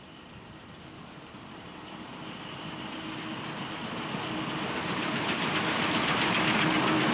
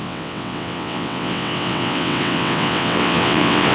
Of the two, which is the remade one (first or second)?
second